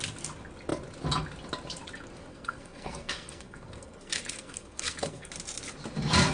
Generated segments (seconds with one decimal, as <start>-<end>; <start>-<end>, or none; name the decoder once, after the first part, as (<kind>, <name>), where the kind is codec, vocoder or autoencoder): 2.3-5.3 (codec, SNAC)